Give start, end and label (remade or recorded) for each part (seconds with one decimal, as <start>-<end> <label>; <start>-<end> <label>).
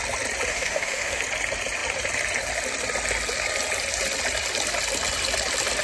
0.0-0.5 recorded; 0.5-1.2 remade; 1.2-5.8 recorded